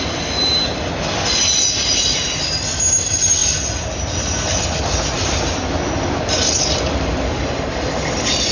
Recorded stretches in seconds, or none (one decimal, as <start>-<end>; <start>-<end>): 0.0-8.5